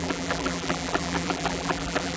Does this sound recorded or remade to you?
remade